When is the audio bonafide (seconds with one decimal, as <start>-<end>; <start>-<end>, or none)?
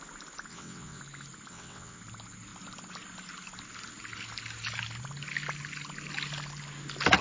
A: 0.0-0.5; 1.0-1.5; 2.0-7.2